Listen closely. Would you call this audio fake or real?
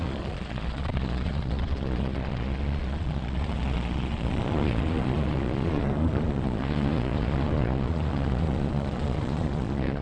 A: fake